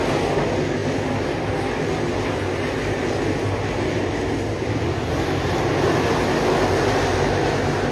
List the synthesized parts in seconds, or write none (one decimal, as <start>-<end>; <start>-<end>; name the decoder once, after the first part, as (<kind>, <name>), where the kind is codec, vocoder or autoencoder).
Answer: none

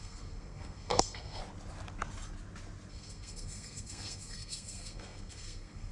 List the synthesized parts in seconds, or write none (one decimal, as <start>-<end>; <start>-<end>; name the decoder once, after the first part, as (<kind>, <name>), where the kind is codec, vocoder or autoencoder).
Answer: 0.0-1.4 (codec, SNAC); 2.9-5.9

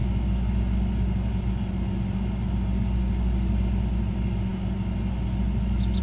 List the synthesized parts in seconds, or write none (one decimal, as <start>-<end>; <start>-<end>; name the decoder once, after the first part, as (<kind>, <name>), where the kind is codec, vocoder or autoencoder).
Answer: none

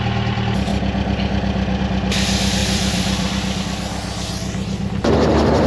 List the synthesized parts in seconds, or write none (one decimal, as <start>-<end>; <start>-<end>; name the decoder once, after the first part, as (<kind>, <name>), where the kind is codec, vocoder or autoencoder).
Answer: 2.6-3.6 (vocoder, BigVGAN v2)

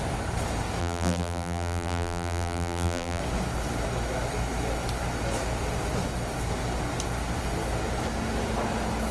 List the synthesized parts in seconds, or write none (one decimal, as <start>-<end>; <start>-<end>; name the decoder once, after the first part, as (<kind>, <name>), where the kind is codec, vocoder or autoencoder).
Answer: 0.8-3.2 (vocoder, BigVGAN v2)